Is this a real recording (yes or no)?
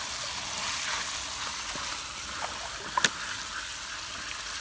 yes